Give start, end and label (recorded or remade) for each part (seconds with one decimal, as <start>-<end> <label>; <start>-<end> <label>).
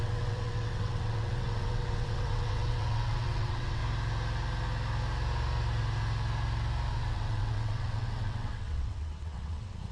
0.0-3.8 remade; 3.8-6.9 recorded; 6.9-9.9 remade